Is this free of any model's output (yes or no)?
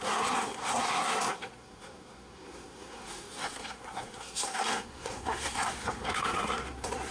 no